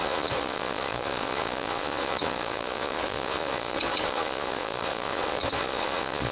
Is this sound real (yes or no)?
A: no